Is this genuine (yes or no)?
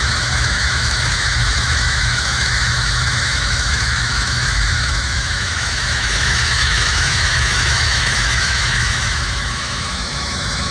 no